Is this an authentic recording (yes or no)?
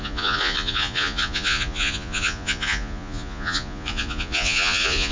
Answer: no